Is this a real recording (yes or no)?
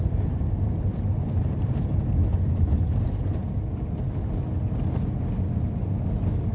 yes